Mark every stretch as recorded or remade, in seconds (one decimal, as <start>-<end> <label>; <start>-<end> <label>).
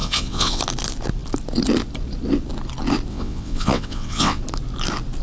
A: 0.0-0.6 remade; 0.6-3.1 recorded; 3.1-4.4 remade; 4.4-5.2 recorded